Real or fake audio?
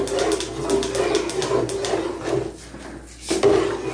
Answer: real